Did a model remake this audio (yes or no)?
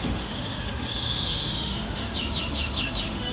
yes